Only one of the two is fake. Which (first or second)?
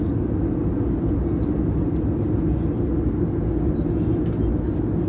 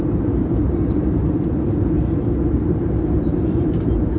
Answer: second